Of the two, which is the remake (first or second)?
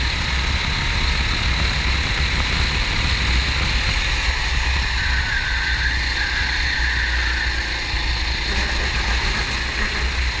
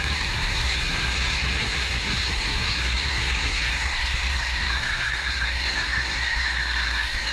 second